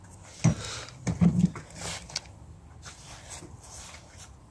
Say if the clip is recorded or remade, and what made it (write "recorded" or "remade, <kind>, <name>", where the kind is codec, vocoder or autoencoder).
recorded